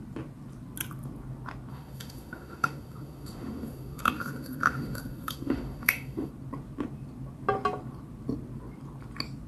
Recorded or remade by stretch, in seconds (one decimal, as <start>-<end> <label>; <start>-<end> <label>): 0.0-1.7 recorded; 1.7-6.3 remade; 6.3-9.5 recorded